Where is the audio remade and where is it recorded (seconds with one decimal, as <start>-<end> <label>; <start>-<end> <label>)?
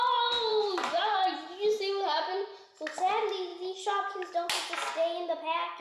0.0-0.5 recorded; 0.5-2.3 remade; 2.3-5.8 recorded